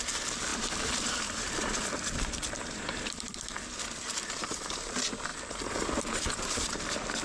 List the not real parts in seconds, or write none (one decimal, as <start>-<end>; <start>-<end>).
0.5-3.4; 5.3-7.2

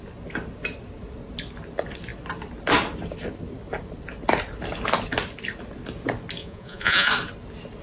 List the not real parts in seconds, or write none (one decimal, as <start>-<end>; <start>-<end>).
6.4-7.1

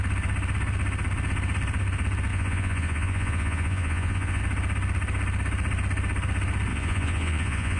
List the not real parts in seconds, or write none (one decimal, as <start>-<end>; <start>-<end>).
2.3-4.4; 6.7-7.8

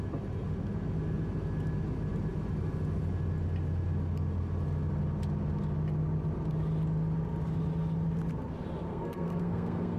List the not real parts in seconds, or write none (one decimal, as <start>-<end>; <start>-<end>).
8.9-10.0